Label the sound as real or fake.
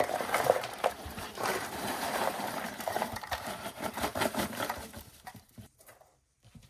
fake